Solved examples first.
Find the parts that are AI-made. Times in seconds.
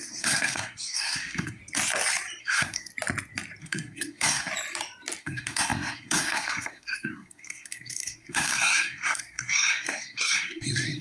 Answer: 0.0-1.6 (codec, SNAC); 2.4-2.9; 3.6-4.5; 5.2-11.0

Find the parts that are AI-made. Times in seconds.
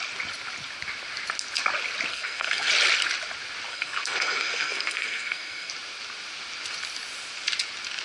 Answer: 2.1-2.7 (codec, SNAC); 3.7-5.7